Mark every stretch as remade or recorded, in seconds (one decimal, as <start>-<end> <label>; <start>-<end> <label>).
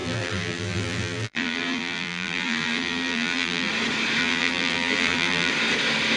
0.0-3.7 remade; 3.7-4.2 recorded; 4.2-5.5 remade; 5.5-6.2 recorded